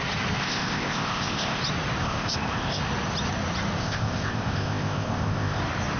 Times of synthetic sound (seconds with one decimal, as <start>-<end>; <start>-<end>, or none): 0.4-1.6; 2.0-2.8; 3.8-5.6